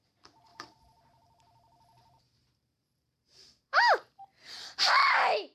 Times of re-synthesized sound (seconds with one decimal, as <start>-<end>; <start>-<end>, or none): 0.5-3.8